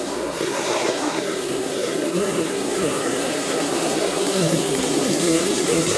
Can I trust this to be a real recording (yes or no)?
no